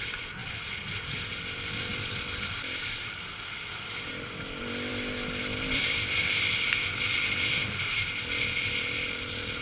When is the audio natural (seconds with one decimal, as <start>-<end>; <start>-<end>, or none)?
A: 0.0-9.6